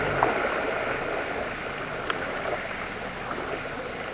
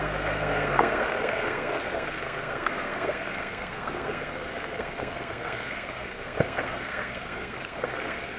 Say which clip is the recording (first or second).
first